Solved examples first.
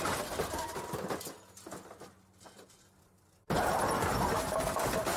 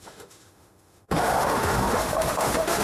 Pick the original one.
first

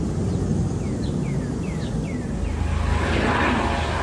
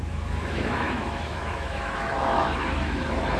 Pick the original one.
first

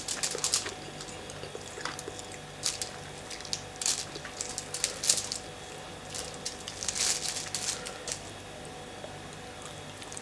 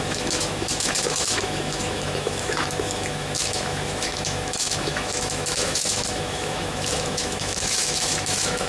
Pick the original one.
first